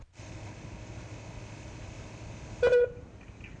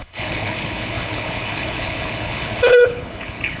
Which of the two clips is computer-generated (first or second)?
second